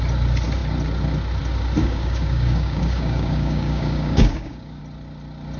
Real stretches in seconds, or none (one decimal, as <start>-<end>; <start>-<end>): 0.0-1.8; 4.8-5.6